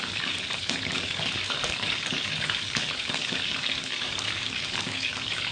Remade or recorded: remade